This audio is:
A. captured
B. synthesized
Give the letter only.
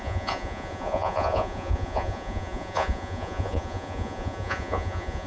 B